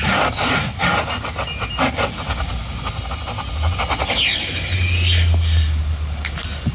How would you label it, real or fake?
real